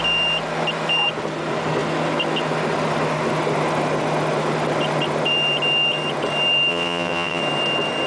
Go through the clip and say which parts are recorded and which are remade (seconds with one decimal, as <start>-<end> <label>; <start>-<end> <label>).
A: 0.0-6.7 recorded; 6.7-7.4 remade; 7.4-8.1 recorded